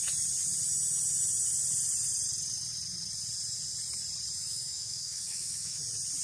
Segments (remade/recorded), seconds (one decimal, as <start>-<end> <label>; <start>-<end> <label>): 0.0-4.4 recorded; 4.4-5.8 remade; 5.8-6.2 recorded